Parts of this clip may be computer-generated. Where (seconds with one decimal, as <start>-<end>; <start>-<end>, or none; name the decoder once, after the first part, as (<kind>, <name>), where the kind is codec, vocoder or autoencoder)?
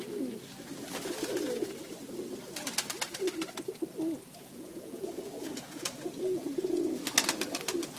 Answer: 4.3-5.1 (vocoder, Vocos); 5.5-6.8